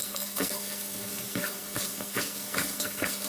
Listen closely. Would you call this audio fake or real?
fake